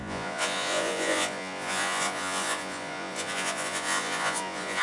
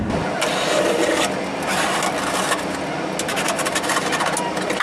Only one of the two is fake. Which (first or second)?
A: first